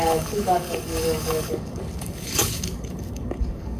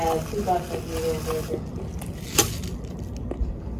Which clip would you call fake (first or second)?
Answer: first